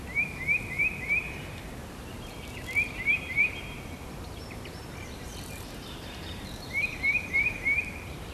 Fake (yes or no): yes